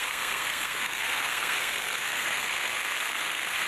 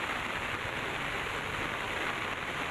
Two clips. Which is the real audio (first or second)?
second